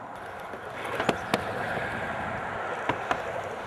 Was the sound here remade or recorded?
recorded